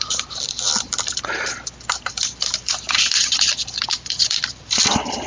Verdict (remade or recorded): remade